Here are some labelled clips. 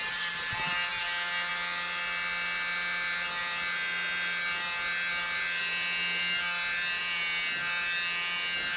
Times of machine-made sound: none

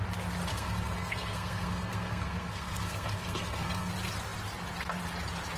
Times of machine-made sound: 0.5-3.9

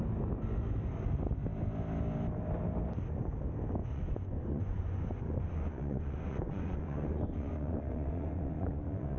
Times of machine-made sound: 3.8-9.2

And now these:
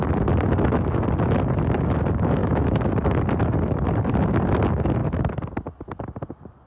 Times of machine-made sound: 2.4-2.9

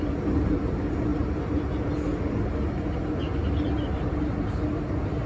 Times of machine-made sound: none

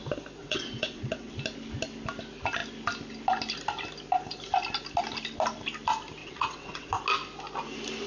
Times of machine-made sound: 0.4-1.3; 6.2-6.9